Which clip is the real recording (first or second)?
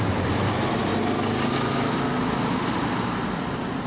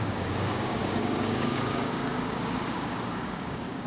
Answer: first